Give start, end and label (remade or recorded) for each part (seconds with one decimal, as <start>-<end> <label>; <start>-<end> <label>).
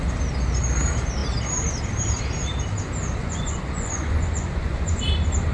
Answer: 0.0-3.2 recorded; 3.2-5.0 remade; 5.0-5.5 recorded